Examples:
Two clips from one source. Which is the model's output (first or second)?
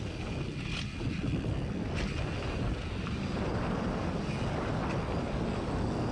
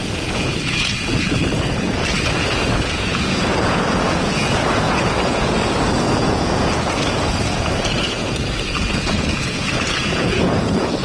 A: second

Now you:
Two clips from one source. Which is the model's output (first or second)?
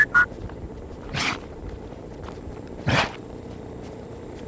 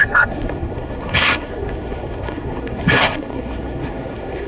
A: second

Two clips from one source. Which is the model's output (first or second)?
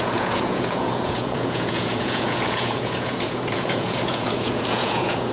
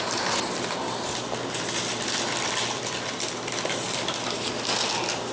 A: first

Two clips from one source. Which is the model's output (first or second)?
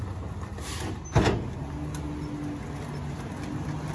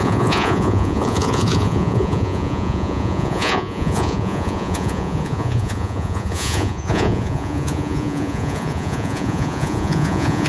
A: second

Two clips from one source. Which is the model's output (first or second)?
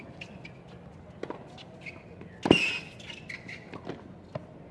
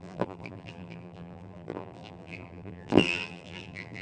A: second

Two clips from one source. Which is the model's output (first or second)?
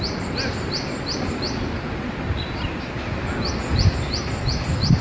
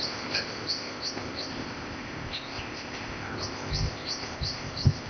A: second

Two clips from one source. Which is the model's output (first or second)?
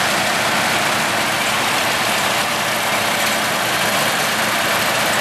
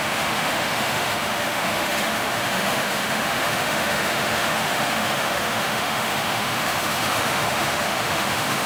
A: second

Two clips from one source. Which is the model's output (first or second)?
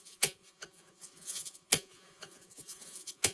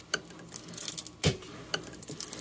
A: first